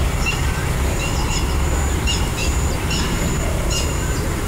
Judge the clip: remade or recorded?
remade